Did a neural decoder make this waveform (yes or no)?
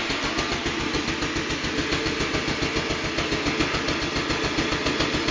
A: no